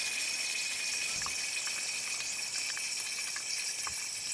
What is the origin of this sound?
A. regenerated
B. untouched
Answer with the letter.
B